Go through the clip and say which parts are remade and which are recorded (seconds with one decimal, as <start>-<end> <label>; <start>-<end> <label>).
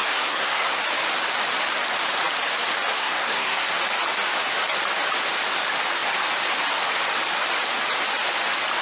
0.0-0.8 remade; 0.8-2.9 recorded; 2.9-3.7 remade; 3.7-8.8 recorded